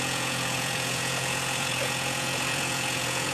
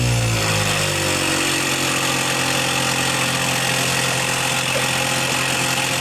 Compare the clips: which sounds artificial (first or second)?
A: first